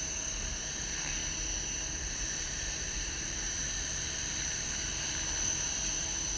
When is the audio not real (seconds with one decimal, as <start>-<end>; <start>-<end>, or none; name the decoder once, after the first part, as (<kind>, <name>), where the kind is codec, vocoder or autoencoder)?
0.0-1.2 (vocoder, BigVGAN v2); 2.0-3.6; 5.5-6.4